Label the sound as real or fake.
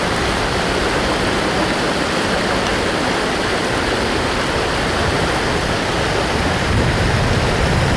real